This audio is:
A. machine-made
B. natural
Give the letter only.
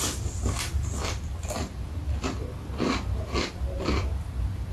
B